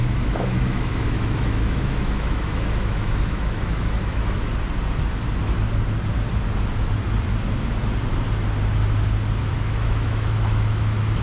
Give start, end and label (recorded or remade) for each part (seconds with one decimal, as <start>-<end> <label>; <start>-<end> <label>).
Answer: 0.0-4.5 remade; 4.5-9.4 recorded; 9.4-11.2 remade